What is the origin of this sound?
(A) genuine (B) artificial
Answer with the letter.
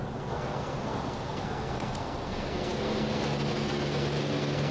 B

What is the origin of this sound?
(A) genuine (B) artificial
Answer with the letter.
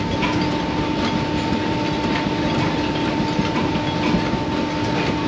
A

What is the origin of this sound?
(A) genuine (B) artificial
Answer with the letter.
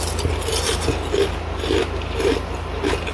A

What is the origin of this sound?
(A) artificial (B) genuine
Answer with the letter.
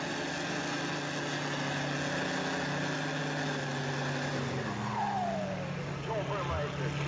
B